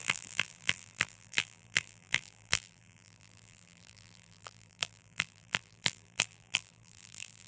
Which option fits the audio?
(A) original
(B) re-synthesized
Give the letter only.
B